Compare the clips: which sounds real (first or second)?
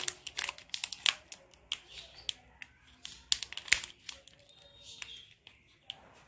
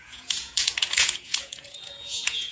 first